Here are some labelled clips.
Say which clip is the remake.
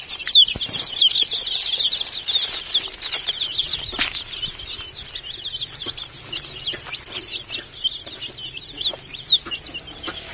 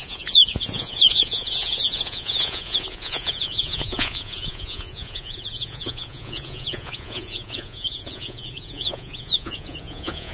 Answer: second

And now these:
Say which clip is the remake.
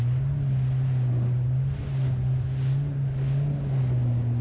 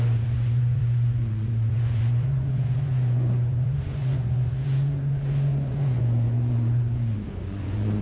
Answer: second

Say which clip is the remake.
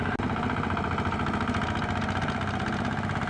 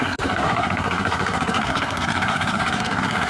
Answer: second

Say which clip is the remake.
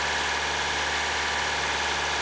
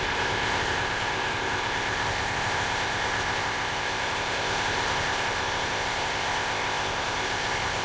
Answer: second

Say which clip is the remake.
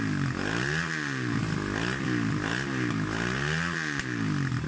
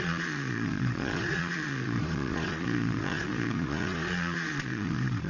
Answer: second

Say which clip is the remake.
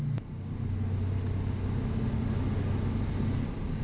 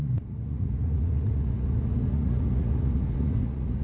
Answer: second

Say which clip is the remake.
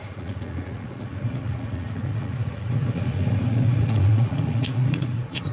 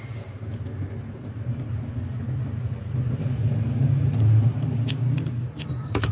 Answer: first